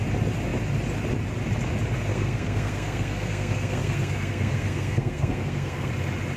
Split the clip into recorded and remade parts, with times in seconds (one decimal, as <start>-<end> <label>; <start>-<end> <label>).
0.0-2.1 recorded; 2.1-5.9 remade; 5.9-6.4 recorded